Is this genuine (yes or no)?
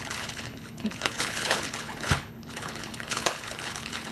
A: no